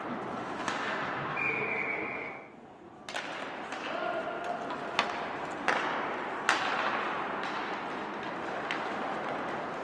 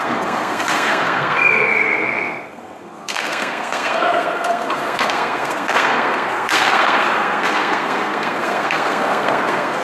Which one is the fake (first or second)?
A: second